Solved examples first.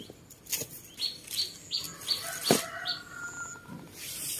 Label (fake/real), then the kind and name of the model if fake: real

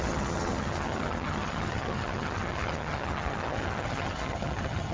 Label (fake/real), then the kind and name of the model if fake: fake, vocoder, HiFi-GAN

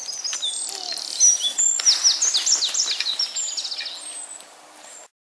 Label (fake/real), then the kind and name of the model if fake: real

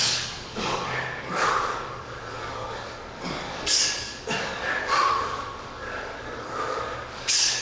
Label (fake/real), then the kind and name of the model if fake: fake, codec, DAC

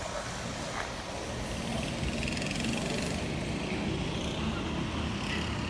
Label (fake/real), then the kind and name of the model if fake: real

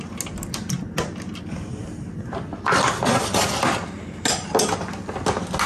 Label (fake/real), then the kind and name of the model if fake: real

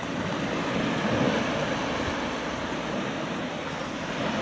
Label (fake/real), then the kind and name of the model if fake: real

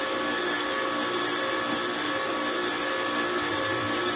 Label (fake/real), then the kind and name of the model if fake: real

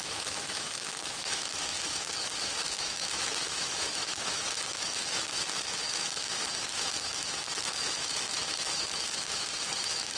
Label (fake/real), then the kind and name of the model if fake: fake, autoencoder, DAC-VAE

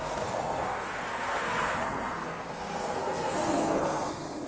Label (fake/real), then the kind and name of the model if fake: fake, codec, SNAC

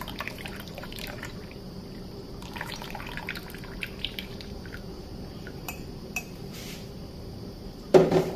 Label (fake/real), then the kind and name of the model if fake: fake, vocoder, BigVGAN v2